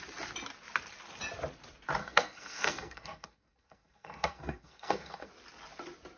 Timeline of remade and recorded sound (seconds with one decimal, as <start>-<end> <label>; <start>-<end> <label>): 0.0-2.0 recorded; 2.0-5.3 remade; 5.3-6.2 recorded